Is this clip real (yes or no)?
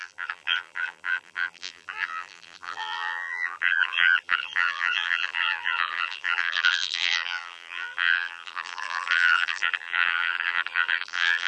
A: no